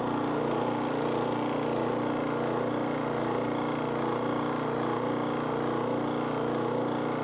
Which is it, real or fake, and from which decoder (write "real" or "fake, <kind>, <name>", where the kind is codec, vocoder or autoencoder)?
real